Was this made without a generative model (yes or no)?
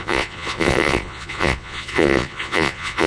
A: no